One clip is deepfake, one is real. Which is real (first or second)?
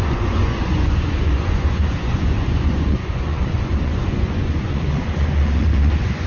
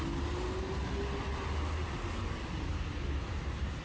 second